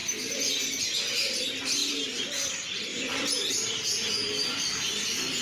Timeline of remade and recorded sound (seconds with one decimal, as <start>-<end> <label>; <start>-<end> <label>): 0.0-0.5 remade; 0.5-1.8 recorded; 1.8-2.5 remade; 2.5-2.9 recorded; 2.9-3.5 remade; 3.5-5.4 recorded